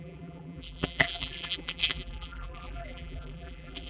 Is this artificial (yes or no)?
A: yes